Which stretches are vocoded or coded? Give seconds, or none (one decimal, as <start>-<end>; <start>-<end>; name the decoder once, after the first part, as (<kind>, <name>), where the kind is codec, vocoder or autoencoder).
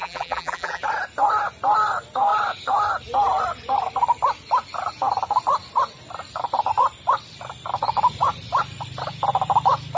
0.0-0.8 (vocoder, BigVGAN v2)